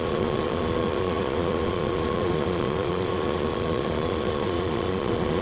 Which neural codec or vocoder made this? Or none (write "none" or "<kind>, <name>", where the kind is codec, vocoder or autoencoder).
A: vocoder, Vocos